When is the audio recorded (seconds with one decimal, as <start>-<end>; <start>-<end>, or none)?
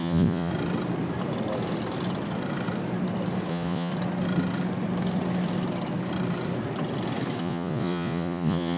0.5-3.5; 3.9-7.4